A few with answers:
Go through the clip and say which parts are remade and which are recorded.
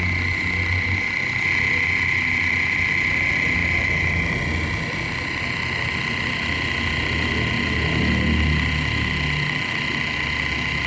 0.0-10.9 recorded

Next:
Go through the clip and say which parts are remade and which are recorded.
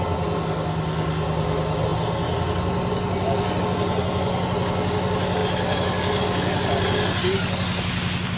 0.0-8.4 recorded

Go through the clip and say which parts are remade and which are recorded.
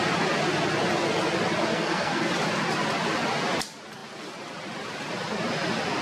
0.0-1.7 recorded; 1.7-2.3 remade; 2.3-6.0 recorded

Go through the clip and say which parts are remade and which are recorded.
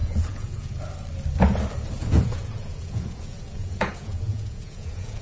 0.0-0.8 remade; 0.8-2.0 recorded; 2.0-5.2 remade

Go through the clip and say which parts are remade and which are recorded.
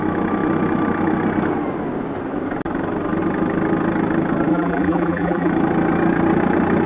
0.0-4.5 recorded; 4.5-5.5 remade; 5.5-6.9 recorded